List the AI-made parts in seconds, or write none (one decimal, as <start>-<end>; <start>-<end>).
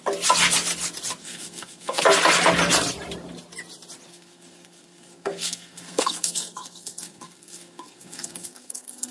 1.2-2.0; 4.1-9.1